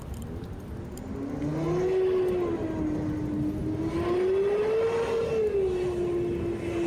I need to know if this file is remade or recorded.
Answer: recorded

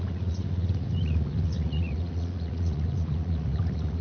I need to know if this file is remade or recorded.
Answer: remade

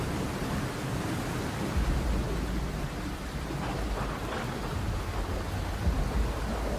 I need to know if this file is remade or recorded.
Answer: recorded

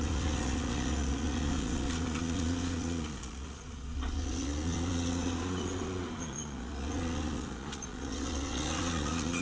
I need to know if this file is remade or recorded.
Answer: remade